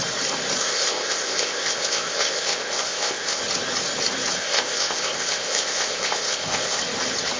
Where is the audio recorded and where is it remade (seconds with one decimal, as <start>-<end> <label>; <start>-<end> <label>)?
0.0-0.6 recorded; 0.6-3.4 remade; 3.4-4.4 recorded; 4.4-6.8 remade; 6.8-7.4 recorded